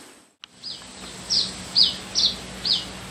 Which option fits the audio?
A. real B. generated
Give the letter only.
A